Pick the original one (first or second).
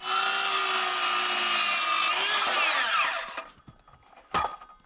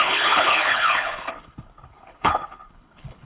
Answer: first